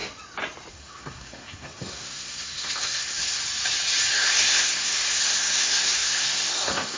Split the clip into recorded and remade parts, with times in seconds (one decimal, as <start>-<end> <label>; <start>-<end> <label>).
0.0-0.7 recorded; 0.7-3.4 remade; 3.4-4.1 recorded; 4.1-7.0 remade